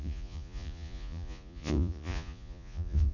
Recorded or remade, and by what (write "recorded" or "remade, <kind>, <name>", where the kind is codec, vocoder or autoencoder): remade, vocoder, Vocos